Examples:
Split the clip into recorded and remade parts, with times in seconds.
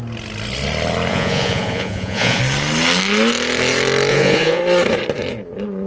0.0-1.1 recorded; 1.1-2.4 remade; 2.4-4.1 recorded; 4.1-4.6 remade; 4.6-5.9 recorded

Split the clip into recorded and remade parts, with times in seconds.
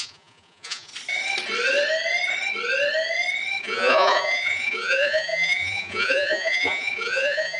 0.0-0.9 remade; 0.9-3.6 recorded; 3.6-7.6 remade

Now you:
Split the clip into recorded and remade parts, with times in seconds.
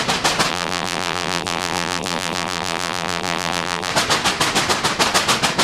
0.0-0.5 recorded; 0.5-3.9 remade; 3.9-5.6 recorded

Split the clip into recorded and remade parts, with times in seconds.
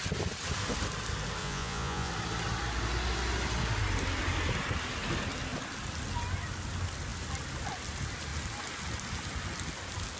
0.0-1.4 recorded; 1.4-2.1 remade; 2.1-10.2 recorded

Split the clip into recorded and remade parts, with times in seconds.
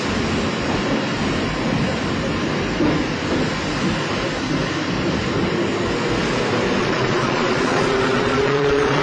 0.0-6.8 recorded; 6.8-9.0 remade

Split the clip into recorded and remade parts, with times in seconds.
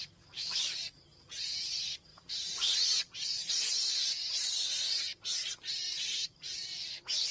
0.0-7.3 recorded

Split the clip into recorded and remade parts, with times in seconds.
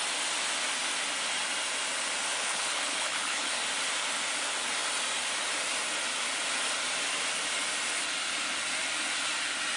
0.0-2.4 recorded; 2.4-3.5 remade; 3.5-9.8 recorded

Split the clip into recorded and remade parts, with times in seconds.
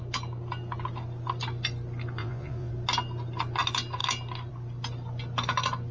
0.0-2.2 recorded; 2.2-2.7 remade; 2.7-5.9 recorded